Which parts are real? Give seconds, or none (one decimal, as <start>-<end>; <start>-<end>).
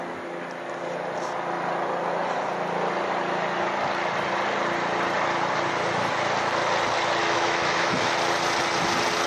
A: 0.0-7.2; 8.1-9.3